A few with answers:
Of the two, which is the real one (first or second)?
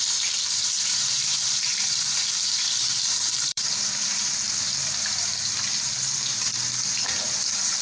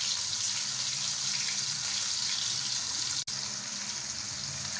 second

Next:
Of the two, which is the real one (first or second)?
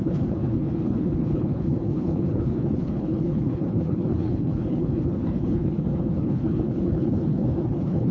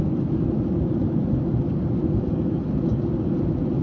second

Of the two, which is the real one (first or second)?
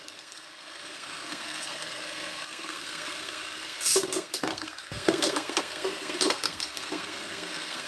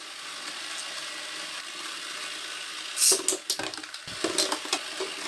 second